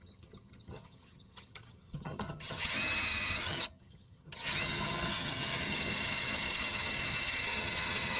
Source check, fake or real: fake